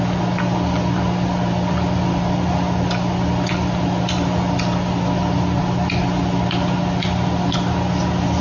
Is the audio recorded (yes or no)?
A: yes